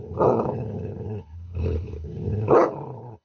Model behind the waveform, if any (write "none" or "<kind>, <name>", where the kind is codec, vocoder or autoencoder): codec, HILCodec